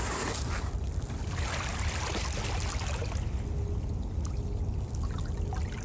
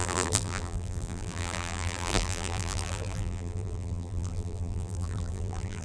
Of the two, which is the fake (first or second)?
second